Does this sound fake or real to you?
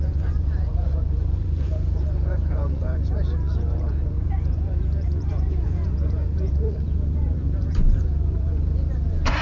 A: fake